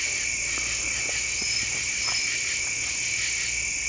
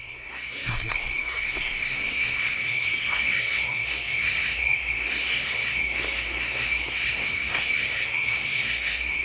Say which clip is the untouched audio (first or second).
first